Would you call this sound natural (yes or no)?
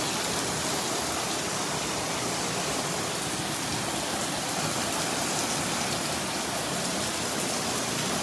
yes